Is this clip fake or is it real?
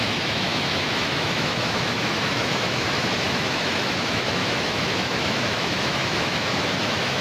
fake